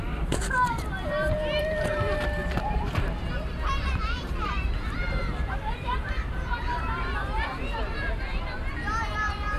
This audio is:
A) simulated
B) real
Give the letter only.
A